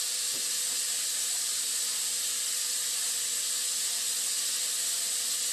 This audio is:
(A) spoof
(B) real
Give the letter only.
B